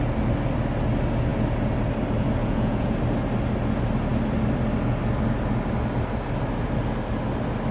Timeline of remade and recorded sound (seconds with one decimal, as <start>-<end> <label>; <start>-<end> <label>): 0.0-2.4 recorded; 2.4-3.0 remade; 3.0-7.7 recorded